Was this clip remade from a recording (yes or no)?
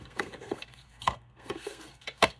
yes